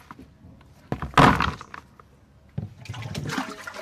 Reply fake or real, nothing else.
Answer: real